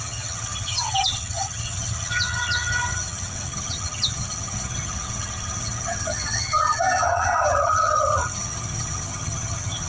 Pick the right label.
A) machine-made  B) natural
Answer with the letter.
A